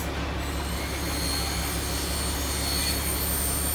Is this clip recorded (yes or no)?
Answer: yes